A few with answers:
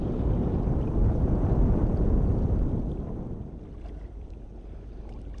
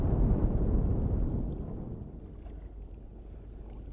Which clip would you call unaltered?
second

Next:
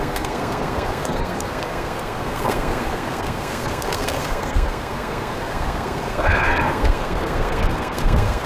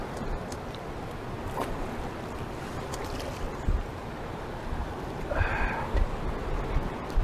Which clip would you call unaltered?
second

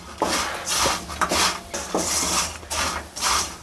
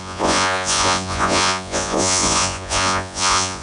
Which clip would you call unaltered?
first